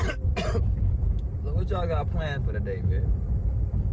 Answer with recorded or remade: recorded